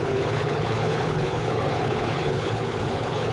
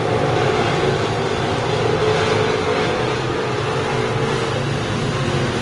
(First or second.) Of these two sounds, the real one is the second